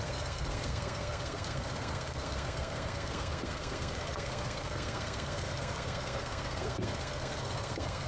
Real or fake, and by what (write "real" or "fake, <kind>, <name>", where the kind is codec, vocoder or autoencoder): fake, codec, SNAC